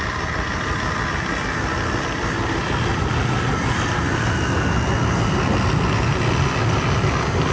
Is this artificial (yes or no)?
no